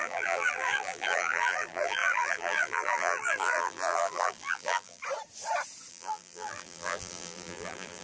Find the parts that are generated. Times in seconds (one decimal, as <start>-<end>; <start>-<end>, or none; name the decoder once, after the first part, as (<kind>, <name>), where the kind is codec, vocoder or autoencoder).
0.0-5.0 (vocoder, BigVGAN v2); 5.9-8.0

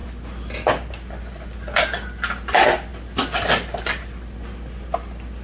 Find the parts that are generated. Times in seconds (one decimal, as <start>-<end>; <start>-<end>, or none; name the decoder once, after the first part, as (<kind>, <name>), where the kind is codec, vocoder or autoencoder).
none